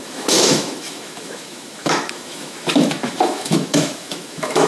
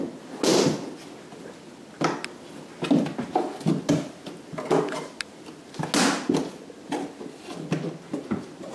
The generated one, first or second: first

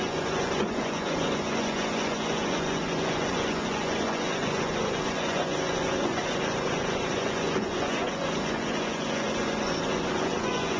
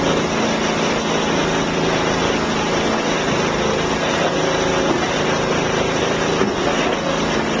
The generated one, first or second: first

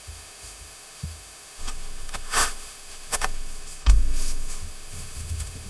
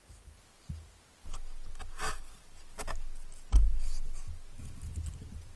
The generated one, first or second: first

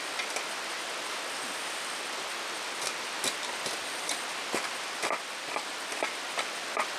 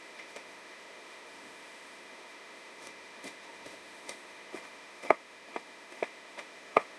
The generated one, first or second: second